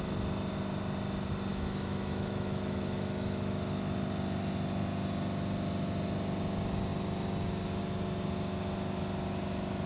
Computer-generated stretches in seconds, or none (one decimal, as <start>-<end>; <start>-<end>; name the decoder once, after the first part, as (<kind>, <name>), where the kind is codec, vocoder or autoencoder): 1.5-4.0 (autoencoder, DAC-VAE)